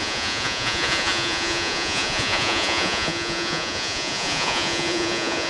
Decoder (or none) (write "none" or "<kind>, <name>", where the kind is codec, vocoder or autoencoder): vocoder, Vocos